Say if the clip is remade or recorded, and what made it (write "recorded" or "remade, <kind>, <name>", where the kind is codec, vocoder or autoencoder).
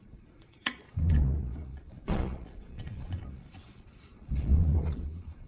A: remade, vocoder, Vocos